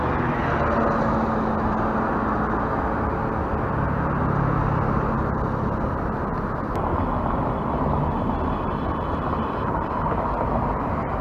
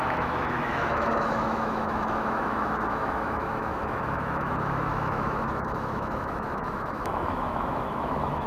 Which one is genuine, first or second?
first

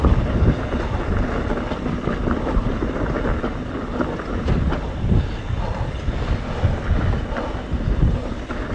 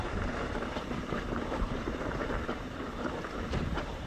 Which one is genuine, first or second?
first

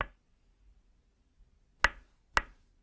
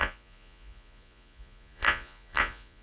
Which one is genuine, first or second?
first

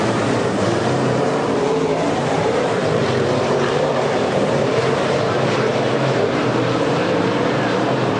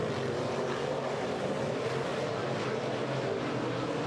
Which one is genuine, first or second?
second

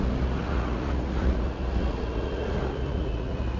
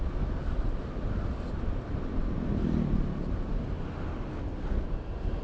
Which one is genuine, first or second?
second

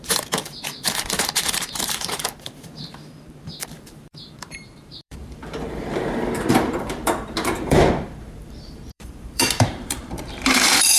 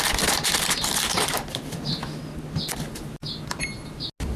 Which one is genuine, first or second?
second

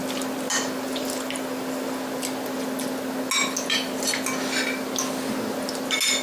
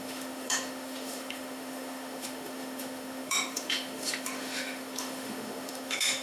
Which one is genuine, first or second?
first